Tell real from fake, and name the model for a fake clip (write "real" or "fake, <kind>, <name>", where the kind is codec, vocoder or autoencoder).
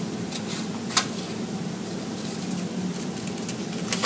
real